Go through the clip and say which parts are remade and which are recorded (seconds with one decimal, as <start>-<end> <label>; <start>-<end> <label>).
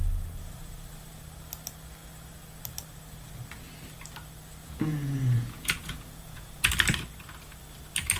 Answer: 0.0-4.6 recorded; 4.6-6.7 remade; 6.7-8.2 recorded